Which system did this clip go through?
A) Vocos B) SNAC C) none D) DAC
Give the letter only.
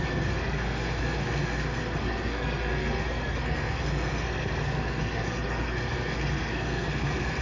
B